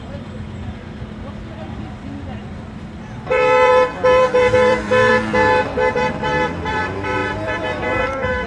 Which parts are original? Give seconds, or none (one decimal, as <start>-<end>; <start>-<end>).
5.1-5.6